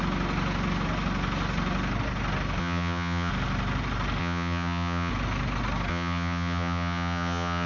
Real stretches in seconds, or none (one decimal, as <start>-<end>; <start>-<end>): 0.0-2.6; 3.3-4.2; 5.1-5.9